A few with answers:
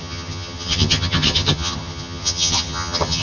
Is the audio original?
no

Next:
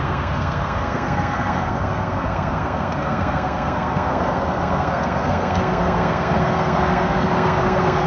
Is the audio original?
no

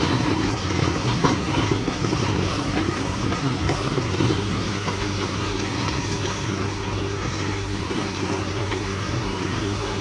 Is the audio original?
no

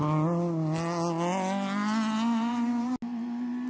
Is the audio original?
yes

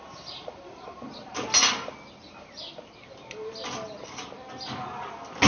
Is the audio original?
yes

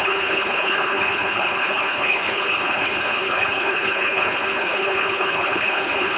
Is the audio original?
no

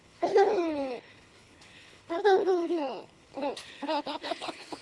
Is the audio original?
no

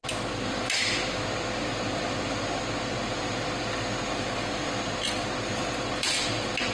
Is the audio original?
yes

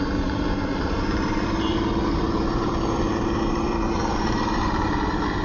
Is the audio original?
no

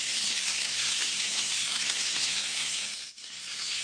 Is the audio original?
no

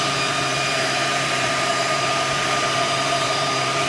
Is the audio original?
no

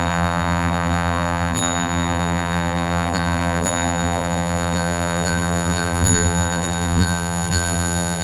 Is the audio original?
no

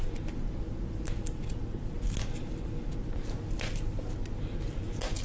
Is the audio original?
yes